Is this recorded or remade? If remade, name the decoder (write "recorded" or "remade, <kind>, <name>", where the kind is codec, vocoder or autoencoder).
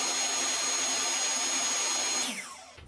recorded